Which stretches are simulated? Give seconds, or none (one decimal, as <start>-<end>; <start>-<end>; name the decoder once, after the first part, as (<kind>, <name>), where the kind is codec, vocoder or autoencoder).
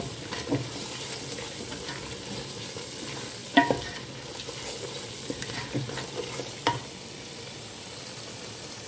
none